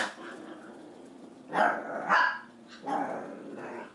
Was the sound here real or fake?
fake